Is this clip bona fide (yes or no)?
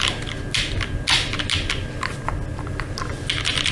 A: yes